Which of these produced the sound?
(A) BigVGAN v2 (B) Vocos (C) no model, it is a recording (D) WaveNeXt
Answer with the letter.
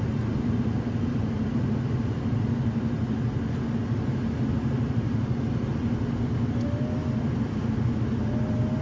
C